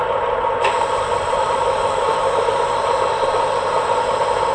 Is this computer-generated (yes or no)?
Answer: yes